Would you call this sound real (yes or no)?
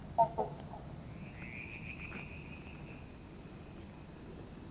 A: yes